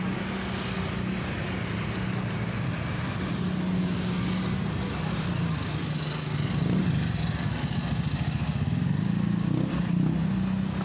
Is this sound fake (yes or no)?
no